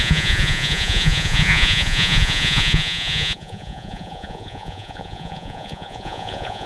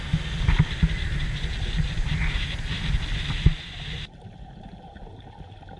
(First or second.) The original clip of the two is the second